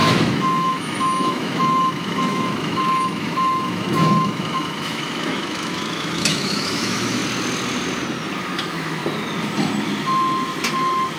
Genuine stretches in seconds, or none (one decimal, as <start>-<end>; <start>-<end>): 7.2-8.6; 9.0-11.2